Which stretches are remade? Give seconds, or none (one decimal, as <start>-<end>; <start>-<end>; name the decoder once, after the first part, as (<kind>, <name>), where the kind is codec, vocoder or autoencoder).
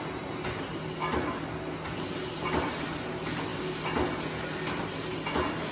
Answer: none